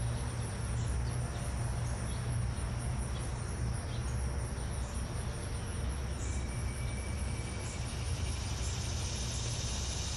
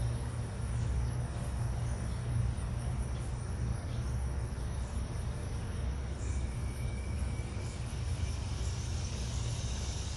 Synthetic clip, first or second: second